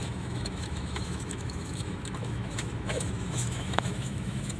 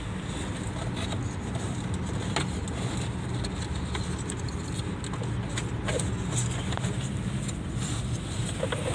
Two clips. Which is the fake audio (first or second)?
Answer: first